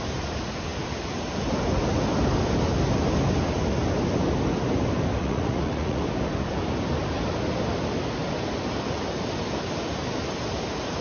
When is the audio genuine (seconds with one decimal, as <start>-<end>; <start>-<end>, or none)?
0.0-5.2; 6.0-11.0